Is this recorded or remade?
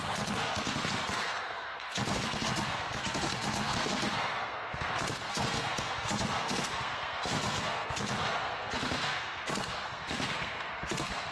remade